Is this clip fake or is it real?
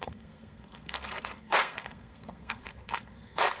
fake